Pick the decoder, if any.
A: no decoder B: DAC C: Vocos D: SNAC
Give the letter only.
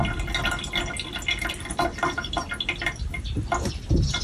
A